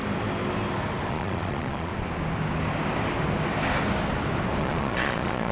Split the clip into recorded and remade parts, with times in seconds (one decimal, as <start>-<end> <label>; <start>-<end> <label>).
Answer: 0.0-1.1 recorded; 1.1-1.9 remade; 1.9-4.6 recorded; 4.6-5.5 remade